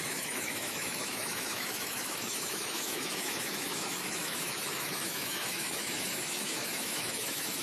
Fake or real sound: fake